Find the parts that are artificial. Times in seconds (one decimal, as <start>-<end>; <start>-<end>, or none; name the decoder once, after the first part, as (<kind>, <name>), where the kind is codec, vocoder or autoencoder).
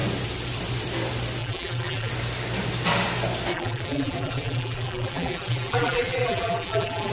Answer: 1.4-2.1 (vocoder, BigVGAN v2); 3.5-7.1